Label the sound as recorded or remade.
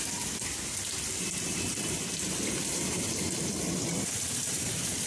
remade